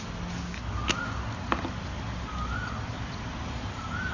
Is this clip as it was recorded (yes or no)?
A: yes